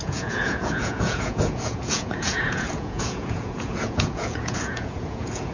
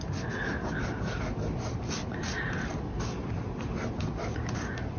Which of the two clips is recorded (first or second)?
second